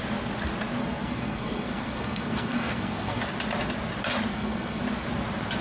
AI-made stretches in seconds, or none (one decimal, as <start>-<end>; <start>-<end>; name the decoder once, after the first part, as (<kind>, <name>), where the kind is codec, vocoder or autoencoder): 0.8-3.2 (codec, SNAC); 4.3-4.8